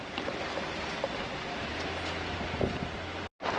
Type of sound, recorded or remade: recorded